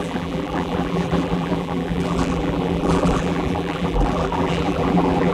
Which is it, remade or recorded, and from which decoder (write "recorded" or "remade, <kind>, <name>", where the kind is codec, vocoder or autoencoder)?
remade, vocoder, BigVGAN v2